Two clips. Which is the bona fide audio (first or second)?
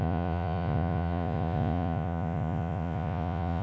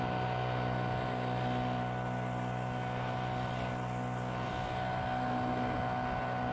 second